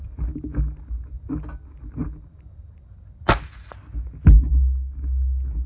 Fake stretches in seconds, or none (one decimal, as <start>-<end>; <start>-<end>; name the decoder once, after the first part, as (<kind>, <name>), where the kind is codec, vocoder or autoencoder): none